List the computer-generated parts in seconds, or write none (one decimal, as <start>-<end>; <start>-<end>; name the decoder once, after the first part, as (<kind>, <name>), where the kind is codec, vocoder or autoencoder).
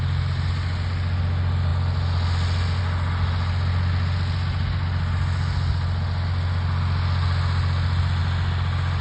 none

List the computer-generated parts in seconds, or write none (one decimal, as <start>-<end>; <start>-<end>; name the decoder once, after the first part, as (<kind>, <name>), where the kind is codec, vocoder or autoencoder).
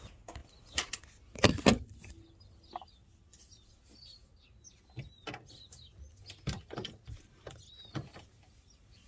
none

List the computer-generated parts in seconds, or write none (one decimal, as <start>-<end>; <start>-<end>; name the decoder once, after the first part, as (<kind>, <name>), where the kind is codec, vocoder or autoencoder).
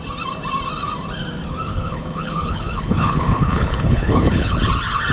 1.7-4.6 (codec, HILCodec)